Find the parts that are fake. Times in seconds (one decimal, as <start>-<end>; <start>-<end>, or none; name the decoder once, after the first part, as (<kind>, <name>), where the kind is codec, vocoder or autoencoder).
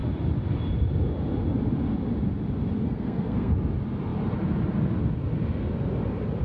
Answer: 2.8-3.5 (codec, SNAC)